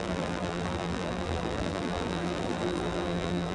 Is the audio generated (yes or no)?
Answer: yes